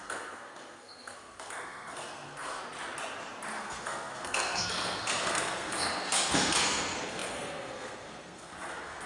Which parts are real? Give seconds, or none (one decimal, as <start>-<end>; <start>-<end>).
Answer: 2.6-3.6

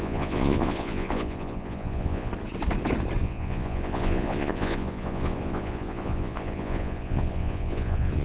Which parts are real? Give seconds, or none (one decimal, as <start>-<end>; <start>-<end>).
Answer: 2.3-3.2

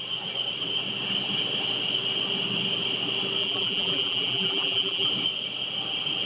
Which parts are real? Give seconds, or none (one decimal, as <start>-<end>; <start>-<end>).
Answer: 0.0-3.4; 5.1-6.3

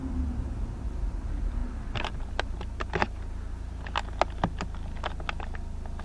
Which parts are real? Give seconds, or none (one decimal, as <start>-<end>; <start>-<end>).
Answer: 0.0-6.0

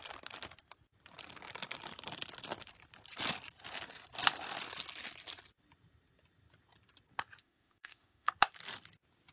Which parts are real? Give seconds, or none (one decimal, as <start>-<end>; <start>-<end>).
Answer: 0.0-7.4; 8.3-9.3